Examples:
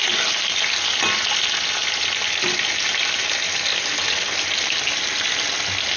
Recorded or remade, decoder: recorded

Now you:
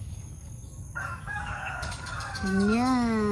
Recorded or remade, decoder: remade, codec, DAC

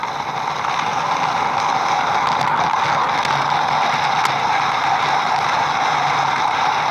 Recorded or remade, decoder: recorded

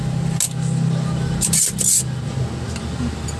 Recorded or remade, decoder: recorded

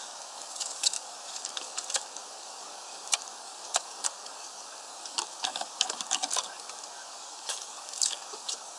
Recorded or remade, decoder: remade, codec, DAC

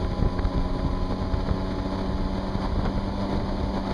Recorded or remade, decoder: recorded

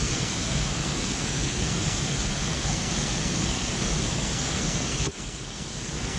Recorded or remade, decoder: remade, codec, SNAC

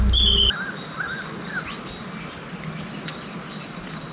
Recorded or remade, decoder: recorded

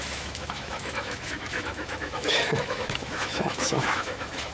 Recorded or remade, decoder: remade, autoencoder, DAC-VAE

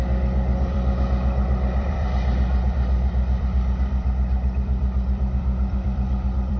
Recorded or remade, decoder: remade, vocoder, BigVGAN v2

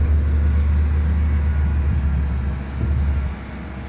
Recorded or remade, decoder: recorded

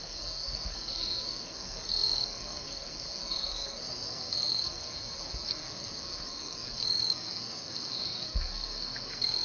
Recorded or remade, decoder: remade, codec, SNAC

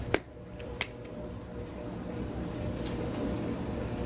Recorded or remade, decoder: recorded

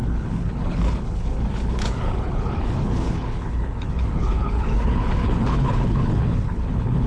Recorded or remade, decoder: remade, codec, HILCodec